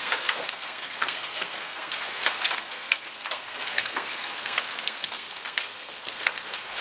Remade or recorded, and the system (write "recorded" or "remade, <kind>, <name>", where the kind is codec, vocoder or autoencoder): remade, codec, SNAC